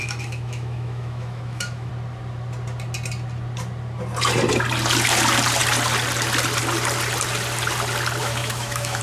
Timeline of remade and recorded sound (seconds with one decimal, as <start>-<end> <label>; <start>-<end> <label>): 0.0-1.9 remade; 1.9-8.2 recorded; 8.2-9.0 remade